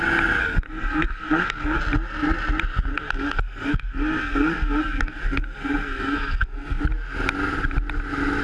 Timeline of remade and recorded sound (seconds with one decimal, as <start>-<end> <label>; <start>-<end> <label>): 0.0-0.4 recorded; 0.4-1.8 remade; 1.8-2.9 recorded; 2.9-6.8 remade; 6.8-8.4 recorded

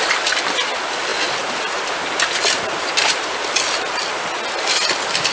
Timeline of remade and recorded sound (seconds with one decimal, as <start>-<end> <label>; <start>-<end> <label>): 0.0-5.3 recorded